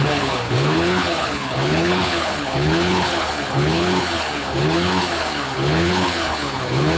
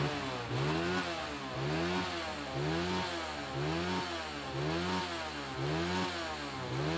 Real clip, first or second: second